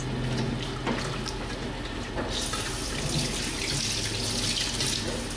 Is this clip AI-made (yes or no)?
no